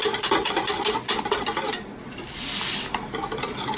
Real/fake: real